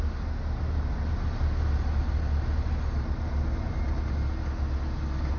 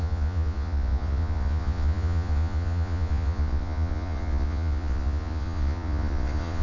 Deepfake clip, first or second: second